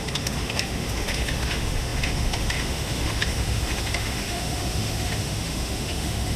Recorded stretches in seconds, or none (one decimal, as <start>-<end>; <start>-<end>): none